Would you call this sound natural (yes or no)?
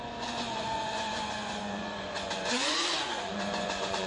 no